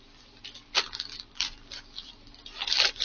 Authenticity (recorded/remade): remade